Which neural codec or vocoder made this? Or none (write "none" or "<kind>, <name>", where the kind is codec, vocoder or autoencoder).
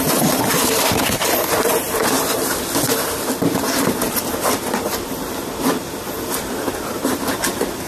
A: vocoder, BigVGAN v2